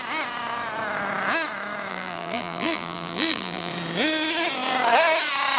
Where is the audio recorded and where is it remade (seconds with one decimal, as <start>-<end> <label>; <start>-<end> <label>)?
0.0-1.9 recorded; 1.9-3.7 remade; 3.7-5.6 recorded